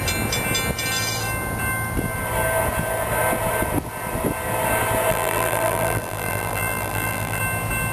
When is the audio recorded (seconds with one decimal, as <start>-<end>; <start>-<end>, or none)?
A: 0.0-5.1; 7.4-7.9